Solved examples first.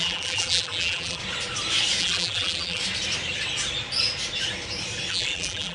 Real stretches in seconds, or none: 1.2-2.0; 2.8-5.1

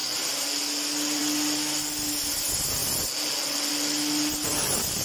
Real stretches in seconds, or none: 0.5-5.0

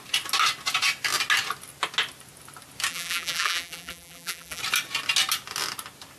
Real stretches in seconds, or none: 0.0-2.9; 4.6-6.2

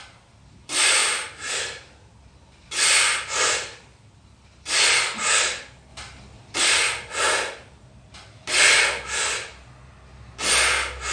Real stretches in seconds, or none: 0.0-1.0; 1.5-11.1

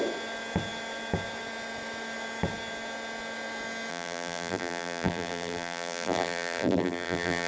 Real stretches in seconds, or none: 0.0-3.9

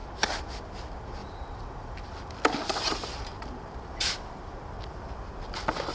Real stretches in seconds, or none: 0.0-1.2; 4.7-5.9

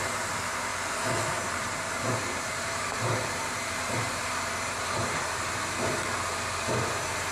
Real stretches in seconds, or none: 0.7-1.4